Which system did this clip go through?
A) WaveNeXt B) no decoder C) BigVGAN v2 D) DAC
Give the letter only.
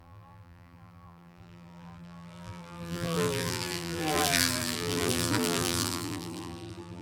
C